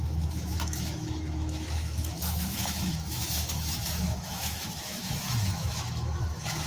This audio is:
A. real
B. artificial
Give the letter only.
B